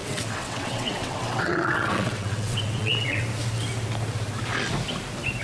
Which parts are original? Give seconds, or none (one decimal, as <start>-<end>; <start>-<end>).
3.2-5.4